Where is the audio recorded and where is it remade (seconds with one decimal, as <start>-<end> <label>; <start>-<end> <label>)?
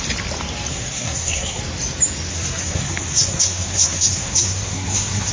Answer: 0.0-0.7 recorded; 0.7-1.6 remade; 1.6-2.3 recorded; 2.3-5.3 remade